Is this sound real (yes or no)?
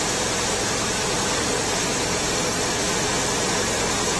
no